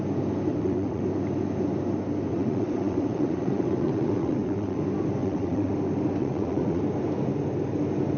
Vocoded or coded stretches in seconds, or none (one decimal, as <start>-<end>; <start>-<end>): 0.5-1.0; 2.3-4.8; 5.2-5.7; 6.2-6.8